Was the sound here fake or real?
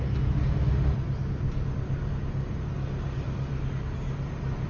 real